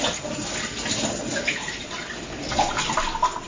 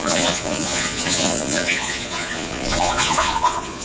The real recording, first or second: first